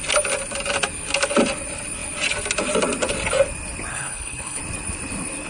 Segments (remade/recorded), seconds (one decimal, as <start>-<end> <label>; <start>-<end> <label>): 0.0-3.9 recorded; 3.9-4.6 remade; 4.6-5.5 recorded